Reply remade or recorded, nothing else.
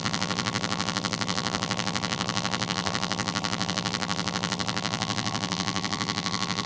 remade